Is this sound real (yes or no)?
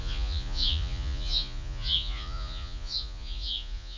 no